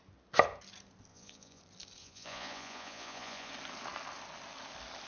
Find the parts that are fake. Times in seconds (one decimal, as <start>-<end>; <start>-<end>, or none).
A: 1.1-1.6; 2.0-3.5